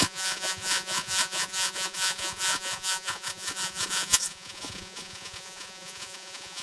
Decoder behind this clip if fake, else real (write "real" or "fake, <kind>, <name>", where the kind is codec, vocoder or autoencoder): fake, vocoder, Vocos